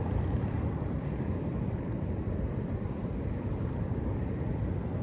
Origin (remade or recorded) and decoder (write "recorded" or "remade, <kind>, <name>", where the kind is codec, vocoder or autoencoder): remade, vocoder, BigVGAN v2